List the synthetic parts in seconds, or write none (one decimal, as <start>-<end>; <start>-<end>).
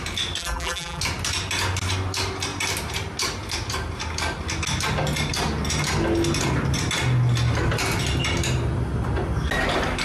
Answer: 0.4-1.0